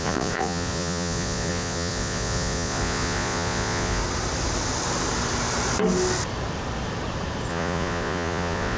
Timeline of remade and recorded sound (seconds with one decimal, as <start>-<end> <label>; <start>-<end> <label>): 0.0-4.0 remade; 4.0-7.5 recorded; 7.5-8.8 remade